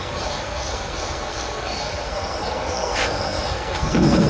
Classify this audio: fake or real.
fake